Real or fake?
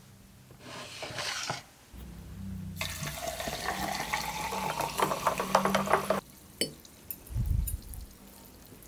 real